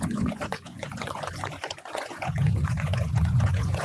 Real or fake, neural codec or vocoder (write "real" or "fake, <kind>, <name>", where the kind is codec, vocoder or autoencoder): fake, vocoder, Vocos